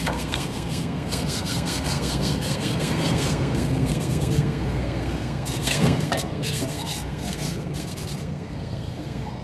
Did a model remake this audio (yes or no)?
yes